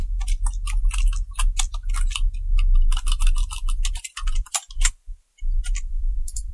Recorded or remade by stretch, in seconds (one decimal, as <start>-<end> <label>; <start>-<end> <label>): 0.0-3.9 recorded; 3.9-6.5 remade